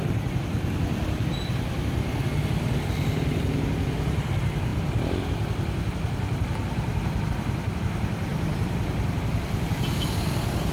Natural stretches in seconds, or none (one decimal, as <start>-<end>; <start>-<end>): 0.0-10.7